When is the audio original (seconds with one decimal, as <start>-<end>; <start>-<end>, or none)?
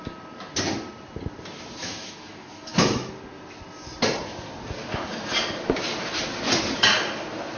0.0-1.8; 3.1-7.6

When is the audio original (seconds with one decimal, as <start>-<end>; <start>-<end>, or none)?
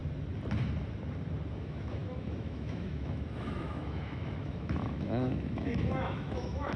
0.0-1.5